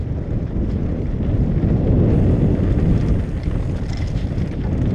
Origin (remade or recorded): recorded